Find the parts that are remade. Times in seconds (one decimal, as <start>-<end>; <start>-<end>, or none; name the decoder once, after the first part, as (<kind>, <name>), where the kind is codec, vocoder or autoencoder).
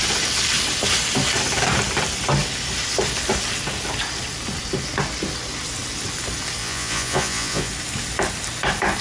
6.6-7.7 (vocoder, Vocos)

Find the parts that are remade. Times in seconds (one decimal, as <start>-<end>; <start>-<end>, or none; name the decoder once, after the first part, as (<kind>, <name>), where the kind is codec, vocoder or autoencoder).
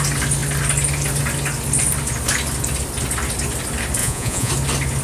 4.0-4.5 (vocoder, Vocos)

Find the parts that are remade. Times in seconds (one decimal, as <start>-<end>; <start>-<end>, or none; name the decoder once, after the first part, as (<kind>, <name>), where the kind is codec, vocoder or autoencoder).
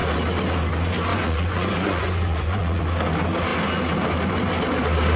1.1-2.8 (vocoder, Vocos)